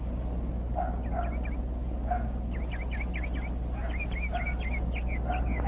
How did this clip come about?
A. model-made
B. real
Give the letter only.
B